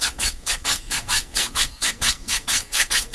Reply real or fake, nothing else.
fake